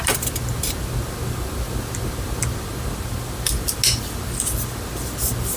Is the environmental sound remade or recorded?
recorded